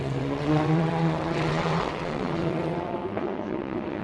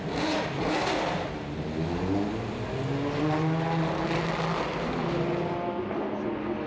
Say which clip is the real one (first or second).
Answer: second